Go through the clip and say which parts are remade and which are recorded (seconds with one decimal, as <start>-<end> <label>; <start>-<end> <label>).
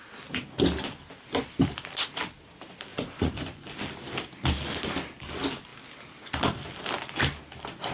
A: 0.0-2.9 recorded; 2.9-3.7 remade; 3.7-7.9 recorded